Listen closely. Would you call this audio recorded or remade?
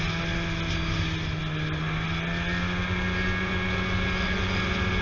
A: recorded